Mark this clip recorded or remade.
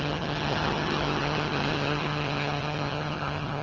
remade